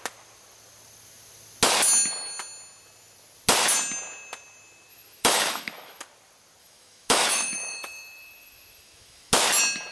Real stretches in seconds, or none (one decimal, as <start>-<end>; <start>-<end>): 0.0-4.9; 6.0-6.6; 9.3-9.9